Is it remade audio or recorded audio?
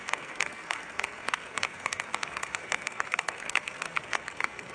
remade